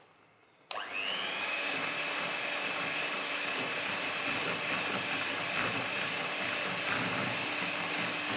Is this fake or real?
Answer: real